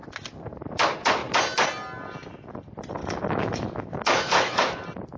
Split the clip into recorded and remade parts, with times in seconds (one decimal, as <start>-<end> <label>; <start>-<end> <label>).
0.0-3.0 recorded; 3.0-4.8 remade; 4.8-5.2 recorded